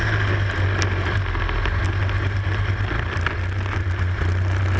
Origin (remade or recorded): recorded